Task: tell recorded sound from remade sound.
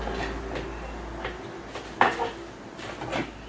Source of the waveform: recorded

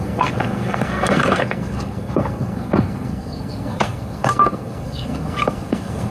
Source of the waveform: remade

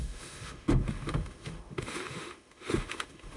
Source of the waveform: remade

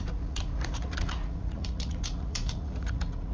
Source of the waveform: remade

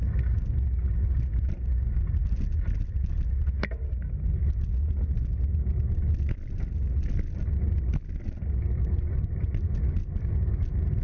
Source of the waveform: recorded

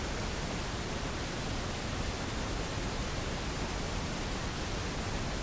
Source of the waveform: recorded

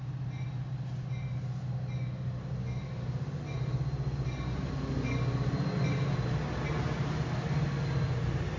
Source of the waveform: recorded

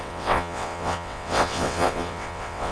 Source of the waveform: remade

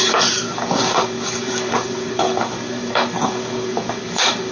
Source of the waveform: remade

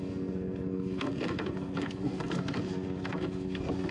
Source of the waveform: remade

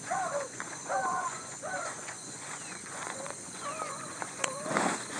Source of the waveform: remade